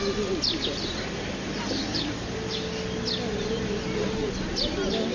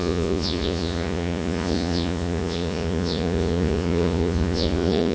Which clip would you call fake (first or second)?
second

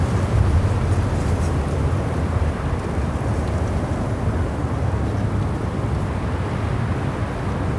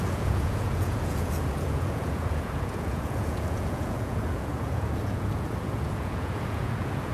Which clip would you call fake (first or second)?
second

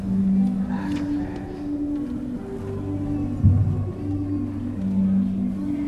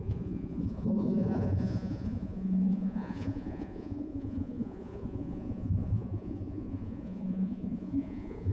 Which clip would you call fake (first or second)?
second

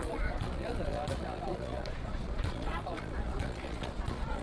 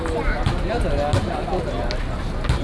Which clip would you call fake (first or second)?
first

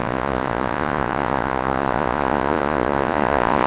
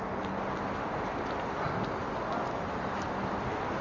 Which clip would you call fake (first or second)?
first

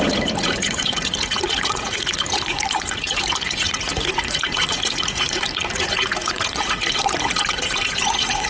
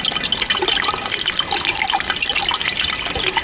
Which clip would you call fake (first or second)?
first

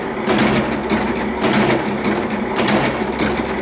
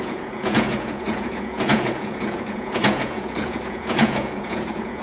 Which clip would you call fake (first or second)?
second